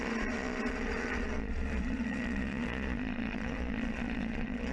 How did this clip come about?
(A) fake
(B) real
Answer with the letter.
A